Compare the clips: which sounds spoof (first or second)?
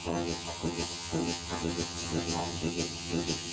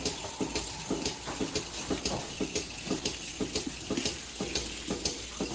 first